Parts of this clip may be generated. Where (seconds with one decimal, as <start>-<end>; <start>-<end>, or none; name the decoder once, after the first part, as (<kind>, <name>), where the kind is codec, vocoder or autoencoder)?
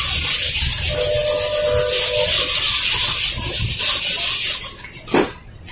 none